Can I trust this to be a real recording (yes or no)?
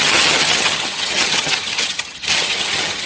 no